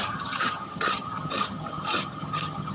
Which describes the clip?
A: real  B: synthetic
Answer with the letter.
B